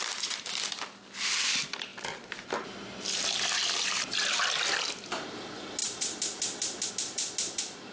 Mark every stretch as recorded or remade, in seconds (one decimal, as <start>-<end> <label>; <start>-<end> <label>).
0.0-7.9 recorded